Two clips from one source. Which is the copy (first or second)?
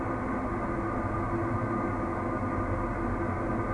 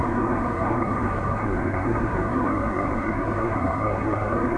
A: second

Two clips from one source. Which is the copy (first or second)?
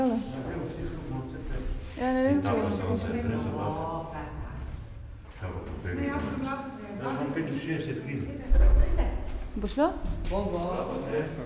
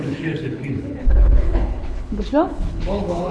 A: second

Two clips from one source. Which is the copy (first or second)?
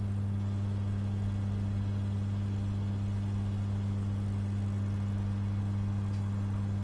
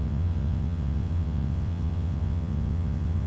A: second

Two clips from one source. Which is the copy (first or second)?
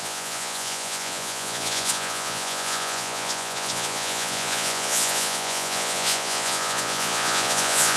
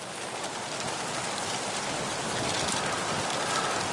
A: first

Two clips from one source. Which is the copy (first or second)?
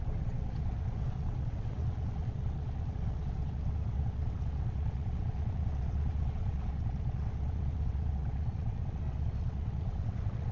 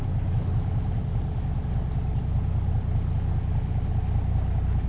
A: first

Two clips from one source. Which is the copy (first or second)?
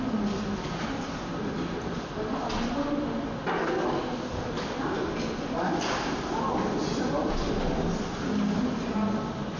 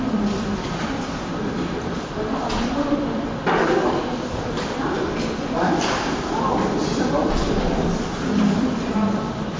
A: second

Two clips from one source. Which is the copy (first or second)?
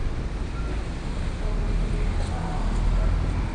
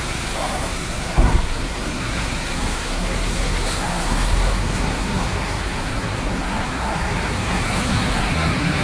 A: second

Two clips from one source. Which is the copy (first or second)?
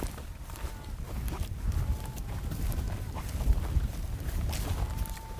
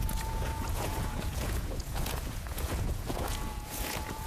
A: second